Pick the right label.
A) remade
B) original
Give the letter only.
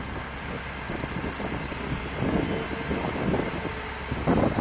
B